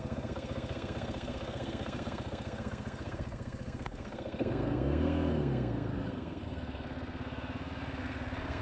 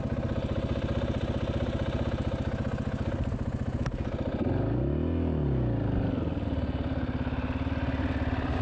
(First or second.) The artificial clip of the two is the first